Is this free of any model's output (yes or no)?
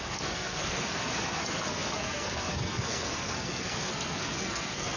no